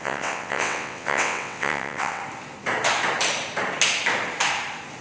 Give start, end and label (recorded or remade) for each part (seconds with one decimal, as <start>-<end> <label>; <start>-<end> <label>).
0.0-2.2 remade; 2.2-5.0 recorded